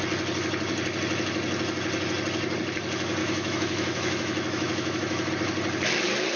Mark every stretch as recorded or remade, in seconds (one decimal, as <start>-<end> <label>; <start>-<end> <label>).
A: 0.0-3.2 recorded; 3.2-5.3 remade; 5.3-6.4 recorded